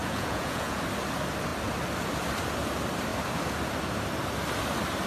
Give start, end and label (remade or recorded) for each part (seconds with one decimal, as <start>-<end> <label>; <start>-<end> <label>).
0.0-0.8 remade; 0.8-5.1 recorded

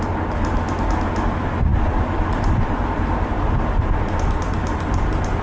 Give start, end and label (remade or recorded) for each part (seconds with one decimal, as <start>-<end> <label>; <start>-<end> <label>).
0.0-1.7 recorded; 1.7-4.4 remade; 4.4-5.4 recorded

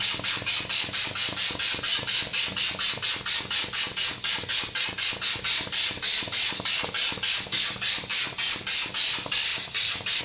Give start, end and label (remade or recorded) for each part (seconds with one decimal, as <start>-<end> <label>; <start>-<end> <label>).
0.0-2.3 remade; 2.3-6.4 recorded; 6.4-8.1 remade; 8.1-8.9 recorded; 8.9-10.2 remade

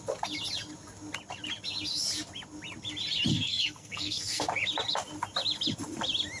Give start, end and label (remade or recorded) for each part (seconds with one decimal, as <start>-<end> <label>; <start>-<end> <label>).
0.0-3.3 recorded; 3.3-4.4 remade; 4.4-6.4 recorded